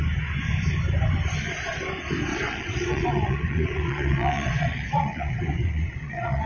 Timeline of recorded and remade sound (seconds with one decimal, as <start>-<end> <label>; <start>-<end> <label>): 0.0-2.3 recorded; 2.3-6.5 remade